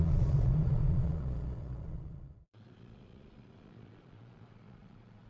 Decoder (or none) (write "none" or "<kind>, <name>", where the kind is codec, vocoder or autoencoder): vocoder, Vocos